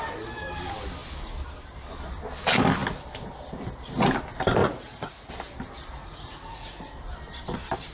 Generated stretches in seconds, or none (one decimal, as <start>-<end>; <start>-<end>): 4.6-5.3; 6.0-6.9